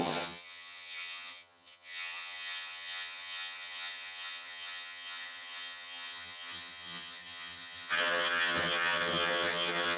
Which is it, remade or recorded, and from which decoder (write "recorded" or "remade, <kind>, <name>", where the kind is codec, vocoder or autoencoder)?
remade, vocoder, HiFi-GAN